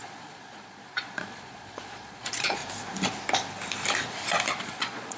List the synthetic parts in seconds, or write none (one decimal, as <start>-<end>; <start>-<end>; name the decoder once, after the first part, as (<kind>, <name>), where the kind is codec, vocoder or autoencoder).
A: 0.0-2.6 (vocoder, Vocos); 4.6-5.2